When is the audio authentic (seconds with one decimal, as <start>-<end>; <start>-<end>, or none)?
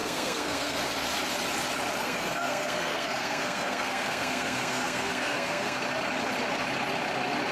0.8-2.0; 5.8-7.5